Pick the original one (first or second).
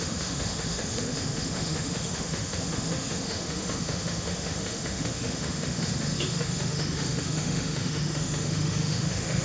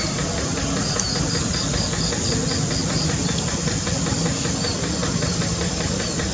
second